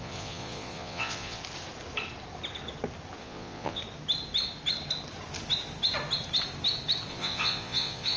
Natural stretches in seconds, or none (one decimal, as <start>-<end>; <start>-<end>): 1.4-3.2; 3.8-7.1